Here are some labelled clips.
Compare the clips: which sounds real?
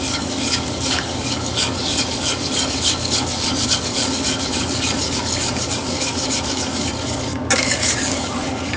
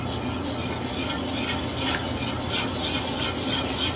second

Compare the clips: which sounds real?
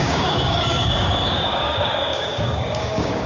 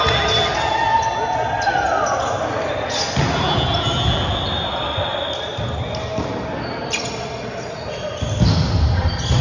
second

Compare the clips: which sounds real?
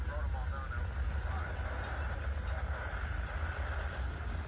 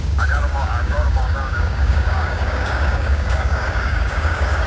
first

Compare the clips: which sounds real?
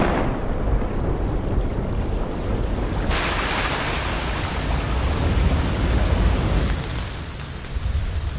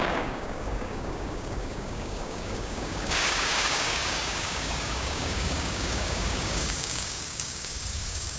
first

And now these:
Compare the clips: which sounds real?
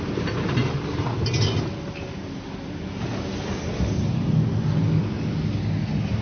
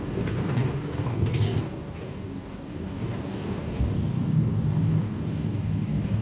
first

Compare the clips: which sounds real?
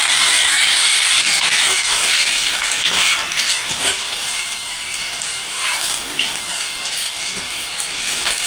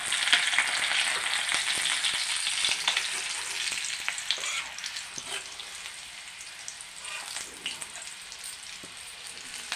second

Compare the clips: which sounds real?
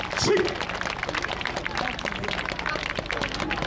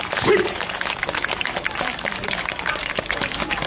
first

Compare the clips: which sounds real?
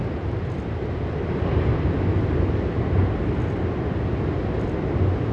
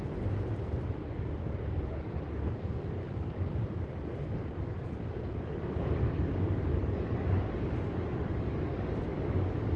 first